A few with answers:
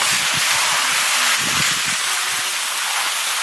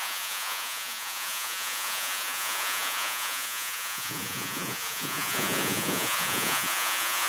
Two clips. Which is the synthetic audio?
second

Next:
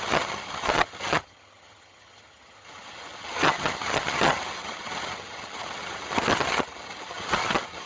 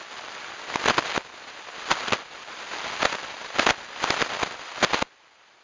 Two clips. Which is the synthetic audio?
first